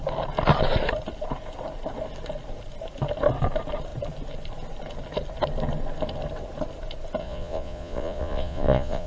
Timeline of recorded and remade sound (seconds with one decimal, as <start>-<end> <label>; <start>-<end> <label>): 0.0-7.2 recorded; 7.2-9.1 remade